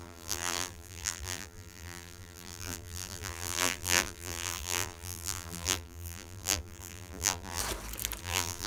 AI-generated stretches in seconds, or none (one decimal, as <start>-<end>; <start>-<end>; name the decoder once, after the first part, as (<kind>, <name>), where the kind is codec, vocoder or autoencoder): 0.0-7.6 (vocoder, BigVGAN v2); 8.2-8.7